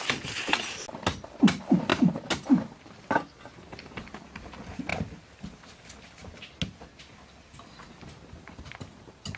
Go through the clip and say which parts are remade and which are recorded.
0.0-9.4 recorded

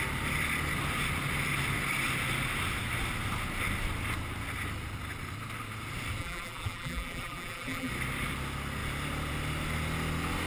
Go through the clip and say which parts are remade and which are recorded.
0.0-6.2 recorded; 6.2-7.9 remade; 7.9-10.5 recorded

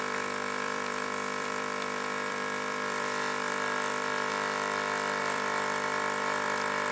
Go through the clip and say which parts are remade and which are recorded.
0.0-4.3 remade; 4.3-5.2 recorded; 5.2-6.9 remade

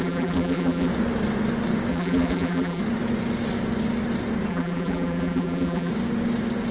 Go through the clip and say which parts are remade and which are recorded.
0.0-0.9 remade; 0.9-1.9 recorded; 1.9-2.8 remade; 2.8-4.5 recorded; 4.5-5.9 remade; 5.9-6.7 recorded

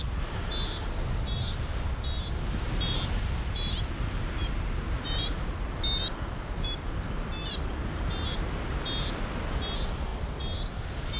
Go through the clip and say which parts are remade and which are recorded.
0.0-11.2 recorded

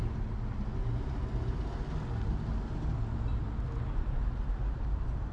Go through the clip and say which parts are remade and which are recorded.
0.0-5.3 recorded